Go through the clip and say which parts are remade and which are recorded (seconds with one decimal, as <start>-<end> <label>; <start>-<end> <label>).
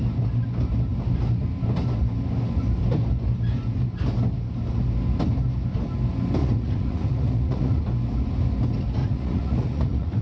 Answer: 0.0-6.4 recorded; 6.4-7.8 remade; 7.8-9.0 recorded; 9.0-10.2 remade